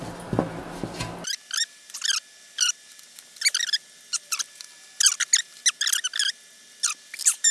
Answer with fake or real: real